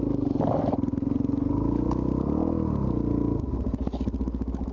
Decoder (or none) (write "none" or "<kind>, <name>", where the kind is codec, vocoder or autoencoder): none